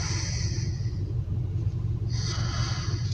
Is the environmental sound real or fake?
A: real